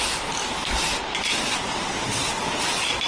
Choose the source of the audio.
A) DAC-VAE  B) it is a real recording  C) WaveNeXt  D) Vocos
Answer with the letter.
B